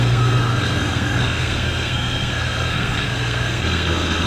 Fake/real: fake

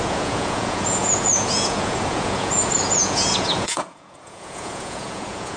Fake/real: fake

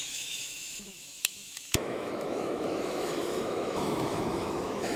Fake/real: fake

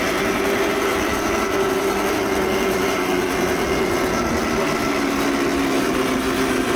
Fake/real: real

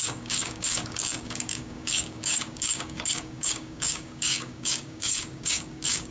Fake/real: fake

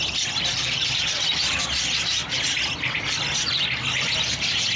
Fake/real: real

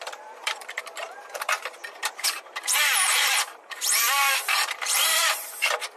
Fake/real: fake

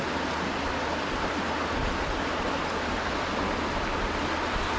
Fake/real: real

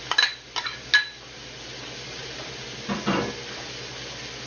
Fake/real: real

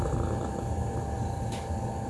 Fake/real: real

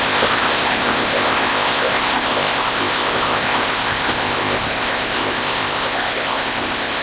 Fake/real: fake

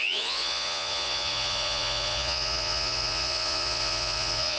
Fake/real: fake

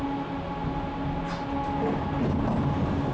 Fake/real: real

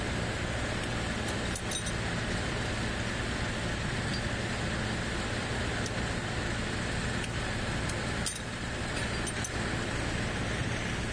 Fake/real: real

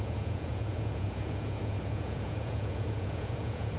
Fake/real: fake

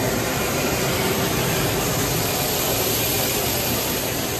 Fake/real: fake